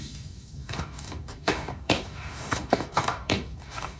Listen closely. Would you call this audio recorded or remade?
remade